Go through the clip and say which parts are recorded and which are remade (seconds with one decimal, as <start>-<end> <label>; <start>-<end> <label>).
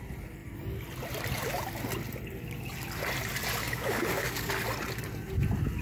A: 0.0-3.6 recorded; 3.6-4.5 remade; 4.5-5.8 recorded